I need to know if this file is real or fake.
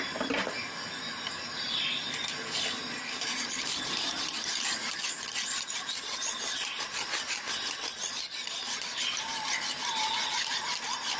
real